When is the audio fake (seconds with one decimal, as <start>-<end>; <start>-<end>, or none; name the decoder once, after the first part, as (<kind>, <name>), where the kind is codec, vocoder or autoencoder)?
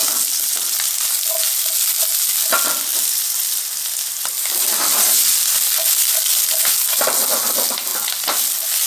2.9-7.0 (vocoder, BigVGAN v2)